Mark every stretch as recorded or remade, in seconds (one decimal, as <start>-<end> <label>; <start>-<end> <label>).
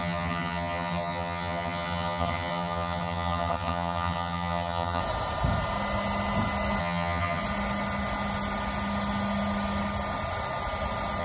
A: 0.0-5.0 remade; 5.0-6.8 recorded; 6.8-7.4 remade; 7.4-11.2 recorded